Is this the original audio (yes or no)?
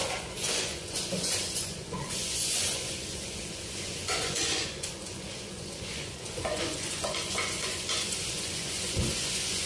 no